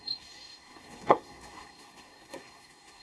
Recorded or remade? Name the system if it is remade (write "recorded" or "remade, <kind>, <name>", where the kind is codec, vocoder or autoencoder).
remade, codec, SNAC